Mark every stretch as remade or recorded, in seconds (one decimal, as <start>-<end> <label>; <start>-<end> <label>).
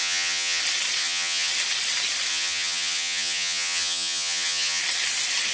0.0-0.6 remade; 0.6-1.0 recorded; 1.0-1.5 remade; 1.5-2.3 recorded; 2.3-4.8 remade; 4.8-5.5 recorded